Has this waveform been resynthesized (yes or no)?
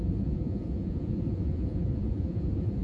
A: yes